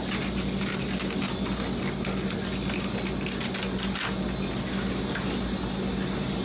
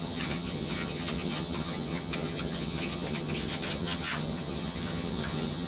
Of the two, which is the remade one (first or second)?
second